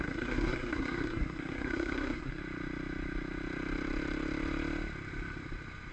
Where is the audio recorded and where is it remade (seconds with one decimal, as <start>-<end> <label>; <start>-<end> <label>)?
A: 0.0-2.4 remade; 2.4-5.9 recorded